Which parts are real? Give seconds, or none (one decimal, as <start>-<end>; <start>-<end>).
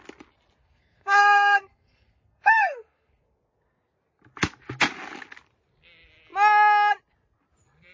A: 0.0-0.6; 3.2-7.9